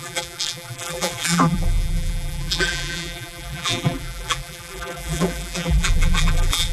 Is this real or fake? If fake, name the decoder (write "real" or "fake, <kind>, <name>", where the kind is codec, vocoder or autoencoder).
fake, vocoder, BigVGAN v2